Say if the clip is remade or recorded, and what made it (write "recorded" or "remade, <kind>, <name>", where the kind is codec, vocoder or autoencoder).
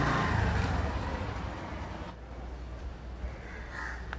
recorded